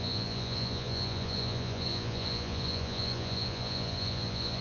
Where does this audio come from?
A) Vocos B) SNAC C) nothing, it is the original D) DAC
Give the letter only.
A